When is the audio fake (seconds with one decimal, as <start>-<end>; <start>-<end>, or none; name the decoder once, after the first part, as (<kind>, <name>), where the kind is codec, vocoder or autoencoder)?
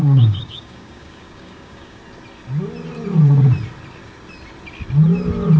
0.0-2.0 (codec, DAC)